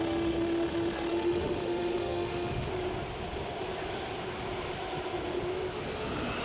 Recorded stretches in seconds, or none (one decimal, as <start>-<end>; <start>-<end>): 2.7-6.4